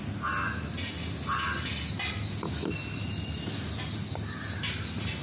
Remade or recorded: recorded